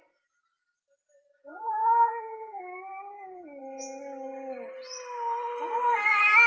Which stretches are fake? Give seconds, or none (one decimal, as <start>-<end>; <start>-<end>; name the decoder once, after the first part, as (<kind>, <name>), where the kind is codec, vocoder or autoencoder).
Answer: 1.3-2.6 (vocoder, BigVGAN v2)